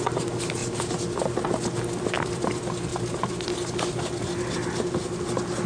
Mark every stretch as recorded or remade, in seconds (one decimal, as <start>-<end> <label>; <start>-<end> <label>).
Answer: 0.0-5.7 recorded